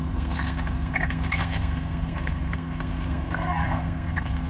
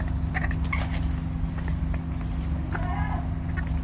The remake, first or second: first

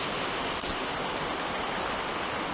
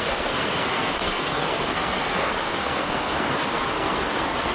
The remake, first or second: second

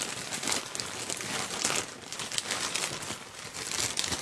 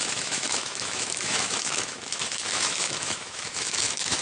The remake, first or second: second